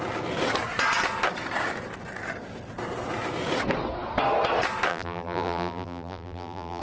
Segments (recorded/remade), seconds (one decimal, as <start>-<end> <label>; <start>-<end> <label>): 0.0-4.9 recorded; 4.9-6.8 remade